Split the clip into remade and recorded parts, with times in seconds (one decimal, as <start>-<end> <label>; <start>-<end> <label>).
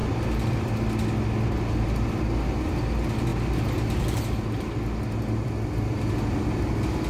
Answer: 0.0-7.1 recorded